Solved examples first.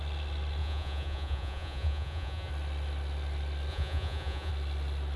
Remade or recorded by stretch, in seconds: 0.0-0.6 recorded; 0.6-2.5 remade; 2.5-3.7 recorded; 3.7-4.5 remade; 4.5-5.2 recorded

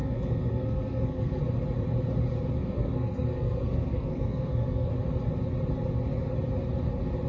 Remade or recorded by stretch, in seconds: 0.0-1.4 remade; 1.4-2.6 recorded; 2.6-4.9 remade; 4.9-7.3 recorded

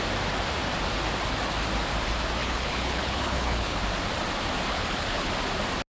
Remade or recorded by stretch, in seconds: 0.0-2.4 recorded; 2.4-3.8 remade; 3.8-4.7 recorded; 4.7-5.3 remade; 5.3-6.0 recorded

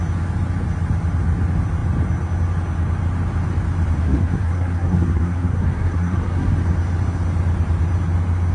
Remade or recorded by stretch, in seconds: 0.0-4.0 recorded; 4.0-6.5 remade; 6.5-8.5 recorded

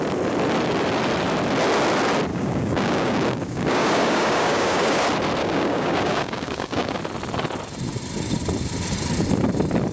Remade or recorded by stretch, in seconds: 0.0-2.3 recorded; 2.3-5.0 remade; 5.0-5.4 recorded; 5.4-7.0 remade; 7.0-9.9 recorded

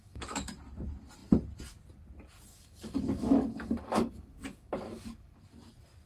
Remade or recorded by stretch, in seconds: 0.0-0.5 remade; 0.5-2.5 recorded; 2.5-5.4 remade; 5.4-6.1 recorded

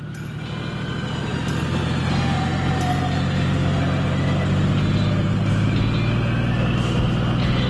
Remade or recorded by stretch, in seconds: 0.0-7.7 recorded